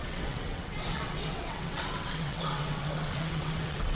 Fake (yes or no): yes